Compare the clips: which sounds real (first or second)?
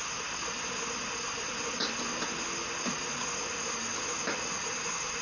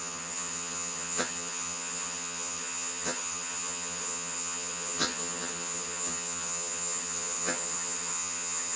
first